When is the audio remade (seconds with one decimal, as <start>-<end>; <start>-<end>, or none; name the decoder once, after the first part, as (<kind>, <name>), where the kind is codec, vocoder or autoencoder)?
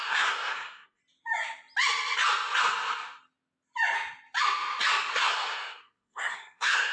0.0-1.0 (codec, SNAC); 5.1-6.9